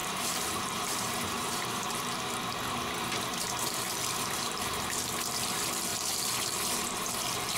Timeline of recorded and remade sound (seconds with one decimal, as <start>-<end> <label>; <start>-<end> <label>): 0.0-2.3 remade; 2.3-7.6 recorded